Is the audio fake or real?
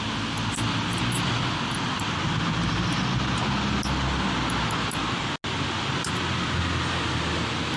real